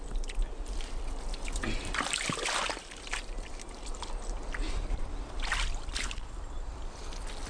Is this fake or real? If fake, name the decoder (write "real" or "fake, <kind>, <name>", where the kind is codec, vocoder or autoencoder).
real